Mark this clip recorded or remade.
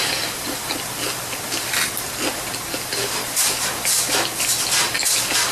recorded